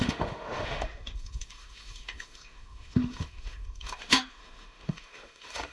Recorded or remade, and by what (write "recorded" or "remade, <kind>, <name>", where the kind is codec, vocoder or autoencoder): remade, autoencoder, DAC-VAE